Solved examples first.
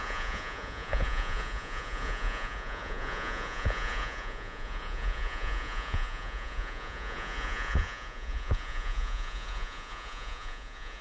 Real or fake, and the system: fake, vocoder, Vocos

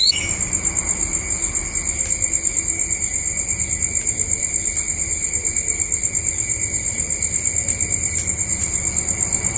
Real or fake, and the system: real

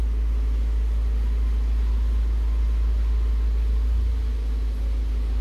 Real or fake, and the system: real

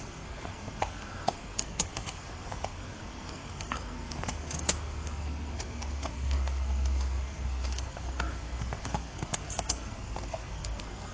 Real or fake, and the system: fake, codec, SNAC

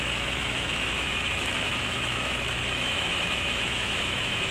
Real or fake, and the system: fake, autoencoder, DAC-VAE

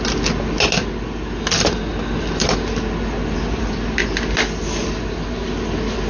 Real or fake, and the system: real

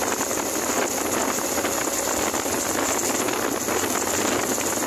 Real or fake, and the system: real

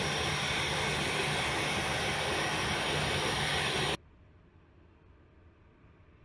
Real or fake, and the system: real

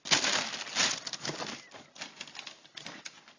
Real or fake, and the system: real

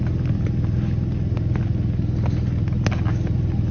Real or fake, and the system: real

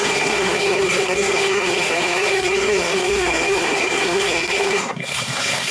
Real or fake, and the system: fake, codec, SNAC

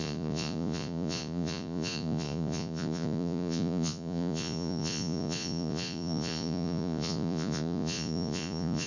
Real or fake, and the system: fake, vocoder, Vocos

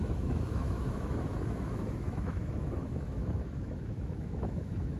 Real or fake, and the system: fake, autoencoder, DAC-VAE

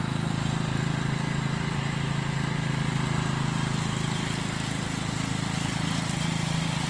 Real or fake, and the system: real